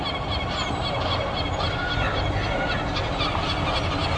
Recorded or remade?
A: recorded